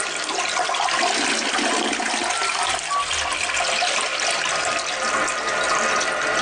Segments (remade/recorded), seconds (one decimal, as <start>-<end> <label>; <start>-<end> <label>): 0.0-6.4 recorded